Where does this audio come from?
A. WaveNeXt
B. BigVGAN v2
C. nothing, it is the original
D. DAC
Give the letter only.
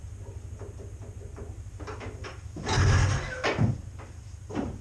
C